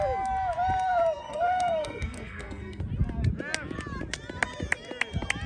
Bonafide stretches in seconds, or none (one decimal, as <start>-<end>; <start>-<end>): 0.0-1.2; 2.8-5.5